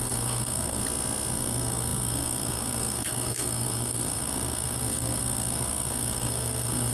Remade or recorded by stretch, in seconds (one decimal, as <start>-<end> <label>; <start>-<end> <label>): 0.0-0.8 remade; 0.8-1.3 recorded; 1.3-6.9 remade